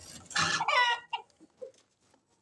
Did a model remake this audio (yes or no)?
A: no